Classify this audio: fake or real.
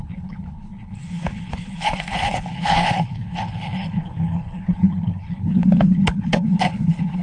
fake